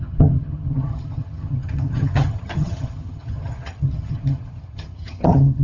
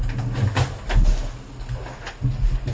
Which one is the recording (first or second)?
second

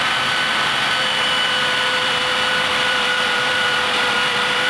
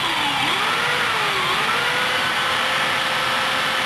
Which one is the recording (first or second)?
second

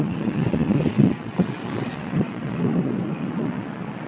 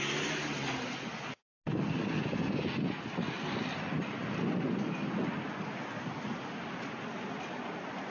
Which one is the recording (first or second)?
second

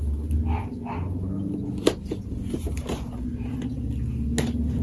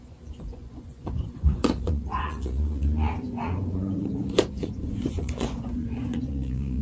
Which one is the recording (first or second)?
first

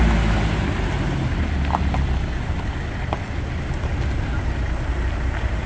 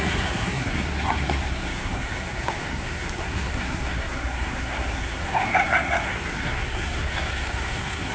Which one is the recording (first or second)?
first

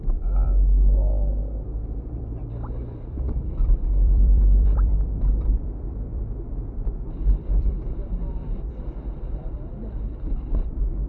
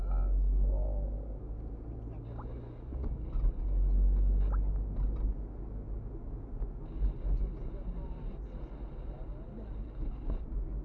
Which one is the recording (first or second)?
second